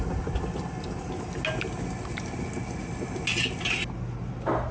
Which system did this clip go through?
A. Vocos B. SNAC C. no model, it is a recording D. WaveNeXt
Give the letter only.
C